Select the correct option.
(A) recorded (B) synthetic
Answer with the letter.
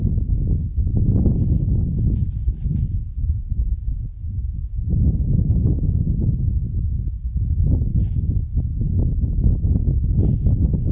A